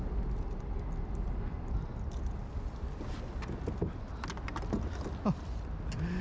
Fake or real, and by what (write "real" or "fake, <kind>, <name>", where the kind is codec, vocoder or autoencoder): real